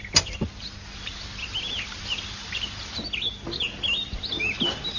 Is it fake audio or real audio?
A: real